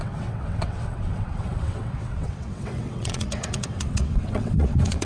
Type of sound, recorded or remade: remade